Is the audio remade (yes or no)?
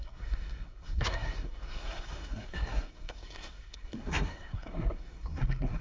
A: yes